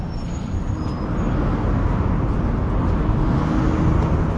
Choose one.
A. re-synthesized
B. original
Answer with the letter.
B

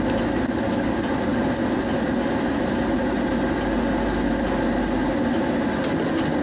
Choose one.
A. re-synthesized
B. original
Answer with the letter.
B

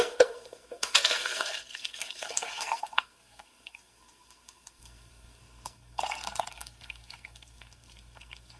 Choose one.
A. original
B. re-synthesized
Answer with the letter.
B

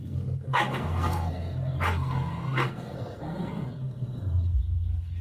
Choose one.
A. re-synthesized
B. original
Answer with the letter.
A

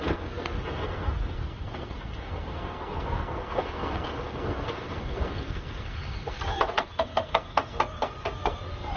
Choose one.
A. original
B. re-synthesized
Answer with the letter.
B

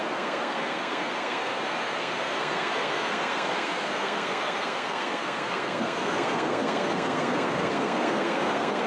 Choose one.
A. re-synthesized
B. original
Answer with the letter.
A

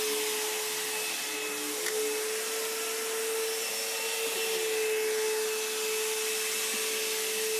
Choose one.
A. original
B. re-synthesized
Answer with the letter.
A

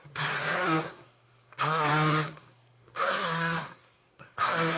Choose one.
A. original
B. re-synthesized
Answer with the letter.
B